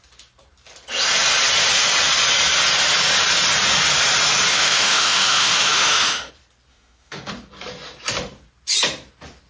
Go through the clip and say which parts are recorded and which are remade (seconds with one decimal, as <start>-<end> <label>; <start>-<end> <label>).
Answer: 0.0-4.5 recorded; 4.5-6.3 remade; 6.3-6.7 recorded; 6.7-7.3 remade; 7.3-9.5 recorded